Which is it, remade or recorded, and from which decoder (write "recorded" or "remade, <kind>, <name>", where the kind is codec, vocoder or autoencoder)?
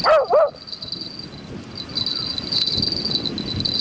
recorded